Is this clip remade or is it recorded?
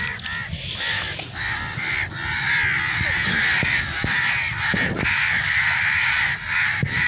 recorded